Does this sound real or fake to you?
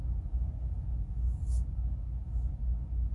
real